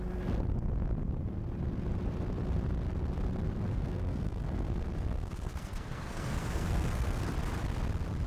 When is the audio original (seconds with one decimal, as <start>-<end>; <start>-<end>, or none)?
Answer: 0.0-3.7; 7.3-8.3